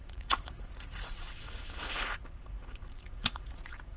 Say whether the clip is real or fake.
fake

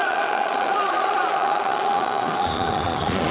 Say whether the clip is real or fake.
fake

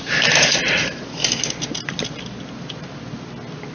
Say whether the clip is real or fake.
real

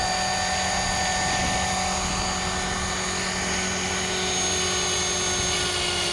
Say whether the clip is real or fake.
real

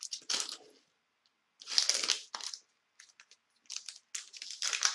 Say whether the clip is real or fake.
real